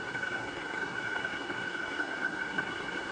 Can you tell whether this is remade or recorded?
remade